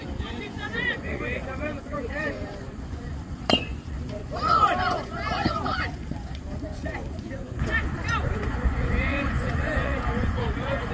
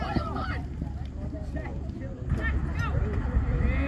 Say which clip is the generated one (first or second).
first